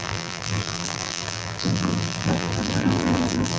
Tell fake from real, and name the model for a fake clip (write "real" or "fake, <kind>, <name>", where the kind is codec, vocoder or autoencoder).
fake, vocoder, BigVGAN v2